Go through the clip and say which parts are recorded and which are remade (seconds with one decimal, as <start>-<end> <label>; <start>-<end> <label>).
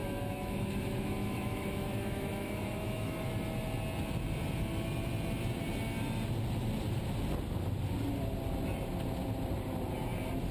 0.0-3.3 remade; 3.3-10.5 recorded